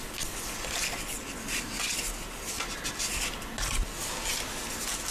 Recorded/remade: recorded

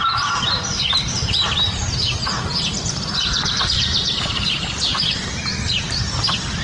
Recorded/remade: remade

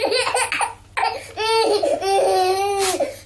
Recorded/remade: recorded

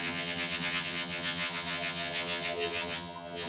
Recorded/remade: remade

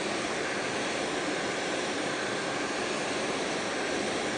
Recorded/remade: recorded